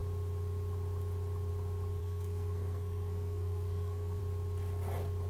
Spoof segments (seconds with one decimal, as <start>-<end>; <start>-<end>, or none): 2.0-4.2